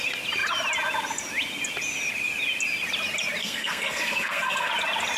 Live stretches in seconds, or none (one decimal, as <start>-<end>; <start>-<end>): 0.0-3.4; 4.7-5.2